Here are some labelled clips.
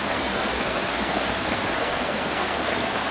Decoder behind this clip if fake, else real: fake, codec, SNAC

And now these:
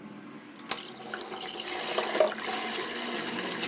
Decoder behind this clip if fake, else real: real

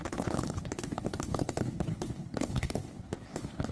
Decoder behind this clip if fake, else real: fake, codec, HILCodec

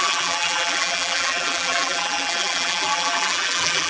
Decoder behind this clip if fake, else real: fake, vocoder, BigVGAN v2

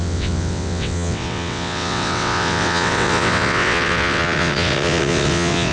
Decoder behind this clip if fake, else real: fake, vocoder, WaveNeXt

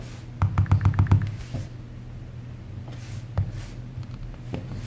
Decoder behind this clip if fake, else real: real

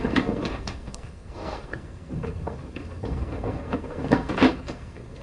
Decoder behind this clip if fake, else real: fake, codec, SNAC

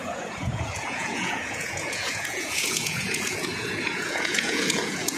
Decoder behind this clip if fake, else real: fake, vocoder, Vocos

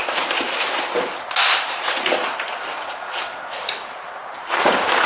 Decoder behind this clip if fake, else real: real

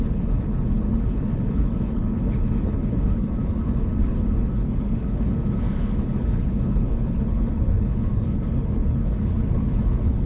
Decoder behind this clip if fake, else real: fake, codec, HILCodec